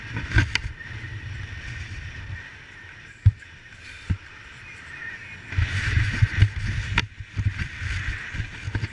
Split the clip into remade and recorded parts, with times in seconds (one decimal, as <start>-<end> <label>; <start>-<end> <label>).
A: 0.0-5.0 remade; 5.0-7.0 recorded; 7.0-8.9 remade